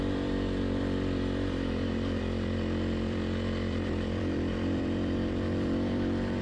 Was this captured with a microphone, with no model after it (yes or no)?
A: no